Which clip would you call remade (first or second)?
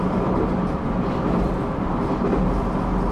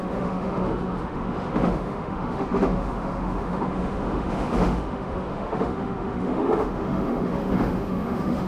second